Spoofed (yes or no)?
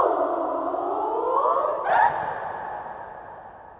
no